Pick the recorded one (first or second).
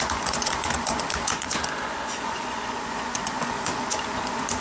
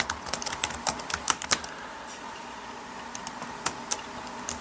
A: second